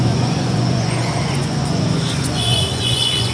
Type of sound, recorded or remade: remade